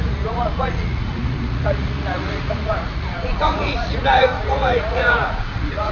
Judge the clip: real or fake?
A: fake